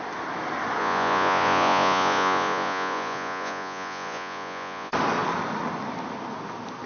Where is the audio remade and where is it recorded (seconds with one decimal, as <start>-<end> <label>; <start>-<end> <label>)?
0.0-0.8 recorded; 0.8-4.9 remade; 4.9-6.9 recorded